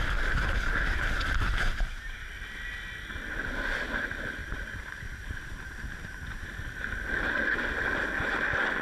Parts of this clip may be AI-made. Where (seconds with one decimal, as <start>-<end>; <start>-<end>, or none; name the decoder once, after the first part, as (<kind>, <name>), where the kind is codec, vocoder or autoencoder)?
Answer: 1.7-2.3 (vocoder, BigVGAN v2); 4.4-6.5